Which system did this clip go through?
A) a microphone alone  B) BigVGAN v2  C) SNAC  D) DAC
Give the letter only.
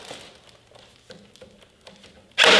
A